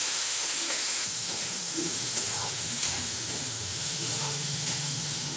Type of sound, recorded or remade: remade